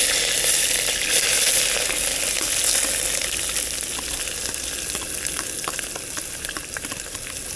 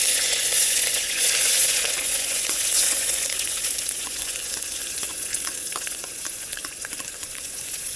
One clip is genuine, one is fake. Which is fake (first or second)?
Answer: second